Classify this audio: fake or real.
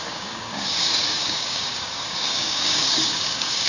fake